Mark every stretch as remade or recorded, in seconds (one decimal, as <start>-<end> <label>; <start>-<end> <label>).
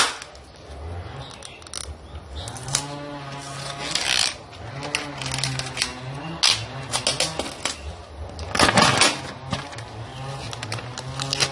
0.0-11.5 recorded